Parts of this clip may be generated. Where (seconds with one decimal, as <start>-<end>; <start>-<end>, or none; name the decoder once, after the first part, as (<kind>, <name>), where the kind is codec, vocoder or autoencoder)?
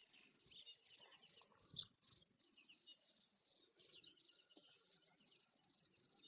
4.5-5.2 (vocoder, BigVGAN v2)